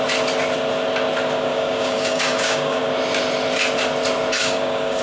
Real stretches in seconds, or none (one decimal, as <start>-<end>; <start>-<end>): 0.0-1.5; 2.8-4.4